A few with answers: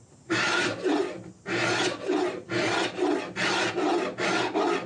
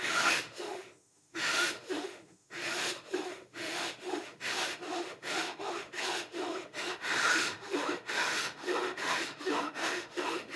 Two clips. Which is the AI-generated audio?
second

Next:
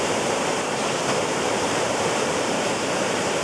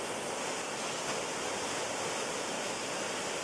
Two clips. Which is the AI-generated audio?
first